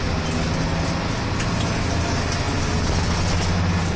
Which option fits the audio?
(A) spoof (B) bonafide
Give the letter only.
B